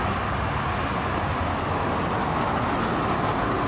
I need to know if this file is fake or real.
real